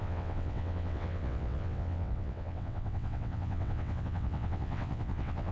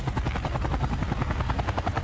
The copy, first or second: first